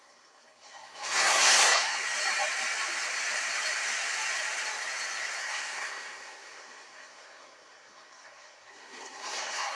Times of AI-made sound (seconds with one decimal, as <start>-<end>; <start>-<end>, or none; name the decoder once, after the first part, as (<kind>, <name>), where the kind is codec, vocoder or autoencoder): 0.0-2.0 (codec, SNAC); 5.4-9.7